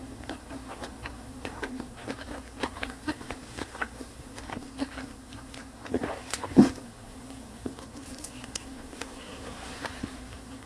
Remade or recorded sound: remade